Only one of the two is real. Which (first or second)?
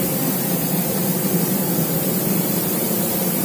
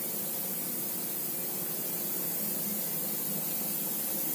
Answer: second